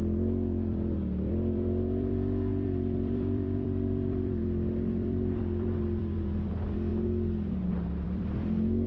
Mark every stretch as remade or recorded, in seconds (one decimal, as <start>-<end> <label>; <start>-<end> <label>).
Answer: 0.0-6.9 remade; 6.9-7.7 recorded; 7.7-8.9 remade